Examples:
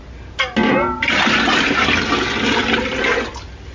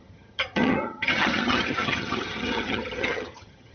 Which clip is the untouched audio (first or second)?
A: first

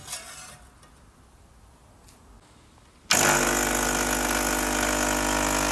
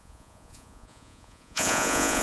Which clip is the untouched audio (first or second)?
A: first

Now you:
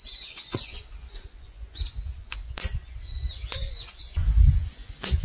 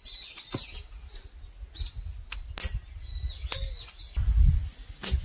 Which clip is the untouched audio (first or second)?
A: second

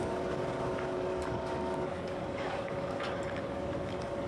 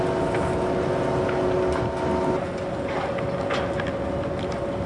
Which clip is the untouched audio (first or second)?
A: second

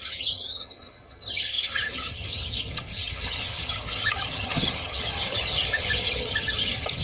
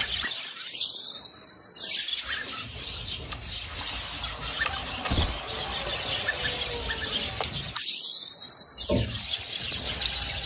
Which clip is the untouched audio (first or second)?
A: second